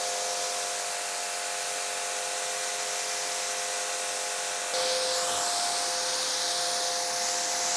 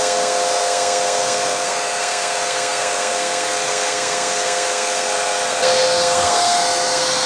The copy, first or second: second